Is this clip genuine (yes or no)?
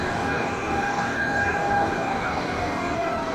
no